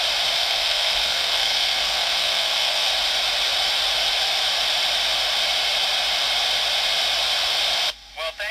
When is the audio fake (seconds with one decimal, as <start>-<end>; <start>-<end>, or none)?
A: 0.4-2.9